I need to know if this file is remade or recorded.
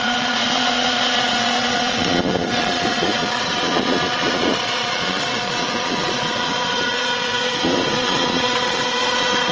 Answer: remade